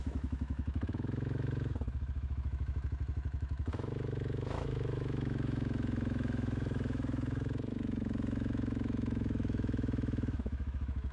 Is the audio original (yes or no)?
no